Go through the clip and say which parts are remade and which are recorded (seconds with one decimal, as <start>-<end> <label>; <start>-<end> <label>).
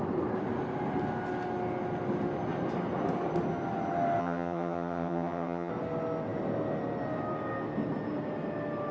0.0-4.2 recorded; 4.2-5.7 remade; 5.7-8.9 recorded